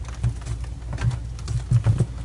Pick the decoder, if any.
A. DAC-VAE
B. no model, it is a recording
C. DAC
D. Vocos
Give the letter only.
B